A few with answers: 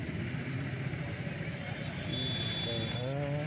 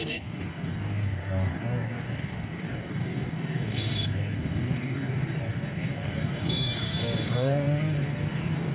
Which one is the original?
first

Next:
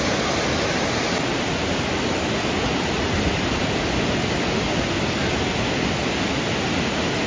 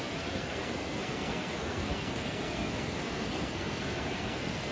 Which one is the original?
first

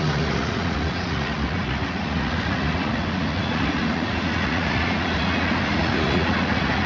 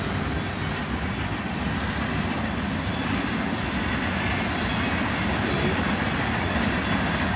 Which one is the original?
second